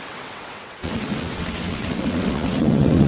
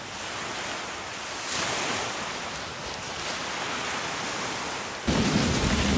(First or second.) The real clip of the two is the second